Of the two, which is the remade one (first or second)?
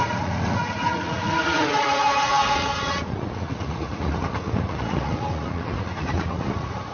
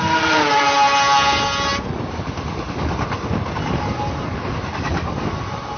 first